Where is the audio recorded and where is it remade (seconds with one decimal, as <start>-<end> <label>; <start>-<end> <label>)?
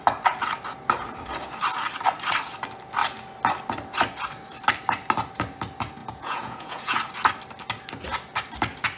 0.0-6.0 recorded; 6.0-7.1 remade; 7.1-9.0 recorded